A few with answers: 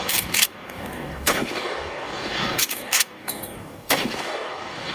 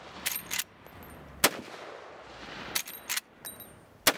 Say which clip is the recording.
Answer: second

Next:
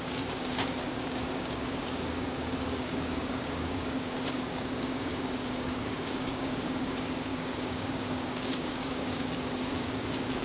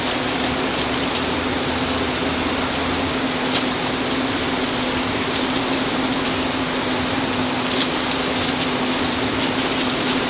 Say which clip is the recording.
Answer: second